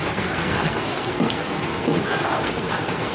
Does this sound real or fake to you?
fake